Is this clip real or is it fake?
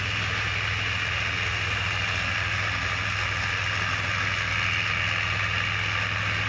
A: real